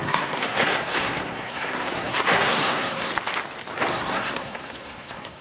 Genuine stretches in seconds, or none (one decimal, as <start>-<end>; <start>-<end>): 3.1-3.9